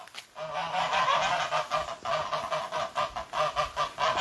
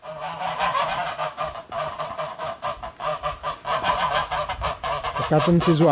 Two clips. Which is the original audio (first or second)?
first